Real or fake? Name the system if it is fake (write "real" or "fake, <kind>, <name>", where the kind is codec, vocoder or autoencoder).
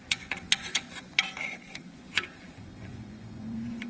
fake, vocoder, Vocos